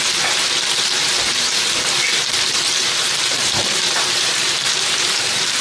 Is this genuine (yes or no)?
no